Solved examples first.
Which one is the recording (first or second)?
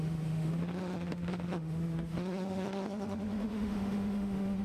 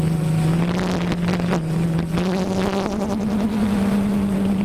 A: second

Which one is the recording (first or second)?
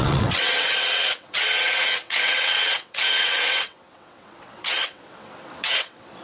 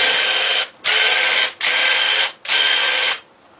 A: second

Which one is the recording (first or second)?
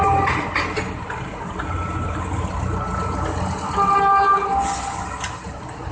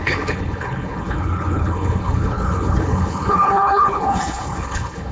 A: first